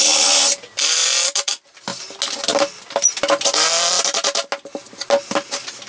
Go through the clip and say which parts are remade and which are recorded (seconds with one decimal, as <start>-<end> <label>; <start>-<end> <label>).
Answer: 0.0-5.9 recorded